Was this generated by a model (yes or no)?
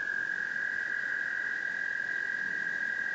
no